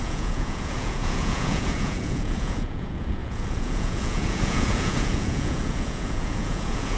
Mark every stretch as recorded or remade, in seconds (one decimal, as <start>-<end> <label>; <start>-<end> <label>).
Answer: 0.0-7.0 remade